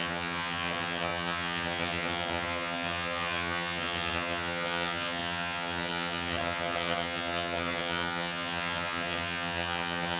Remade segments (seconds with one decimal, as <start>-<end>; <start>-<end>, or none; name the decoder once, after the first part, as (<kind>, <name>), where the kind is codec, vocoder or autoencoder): 0.0-10.2 (vocoder, HiFi-GAN)